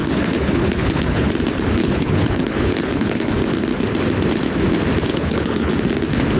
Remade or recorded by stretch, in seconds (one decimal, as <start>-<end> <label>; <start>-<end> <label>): 0.0-1.3 remade; 1.3-1.8 recorded; 1.8-3.3 remade; 3.3-5.1 recorded; 5.1-5.7 remade; 5.7-6.4 recorded